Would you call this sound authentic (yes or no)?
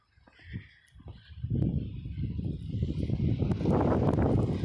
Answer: yes